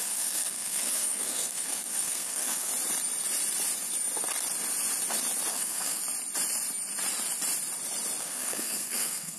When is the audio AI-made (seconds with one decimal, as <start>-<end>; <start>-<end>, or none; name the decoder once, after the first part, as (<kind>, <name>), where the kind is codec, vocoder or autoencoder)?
0.0-2.7 (codec, SNAC); 5.5-6.0; 8.2-9.4

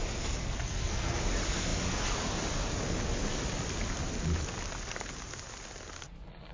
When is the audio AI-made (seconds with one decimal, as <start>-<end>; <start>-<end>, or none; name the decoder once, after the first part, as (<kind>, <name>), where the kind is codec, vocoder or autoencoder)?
0.4-1.2 (codec, SNAC)

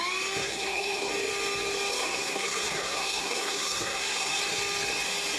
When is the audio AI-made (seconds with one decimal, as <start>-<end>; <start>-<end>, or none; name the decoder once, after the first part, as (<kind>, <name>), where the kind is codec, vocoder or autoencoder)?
0.4-1.1 (codec, SNAC); 1.9-4.4